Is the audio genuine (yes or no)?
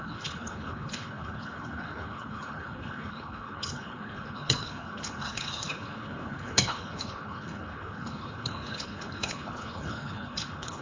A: no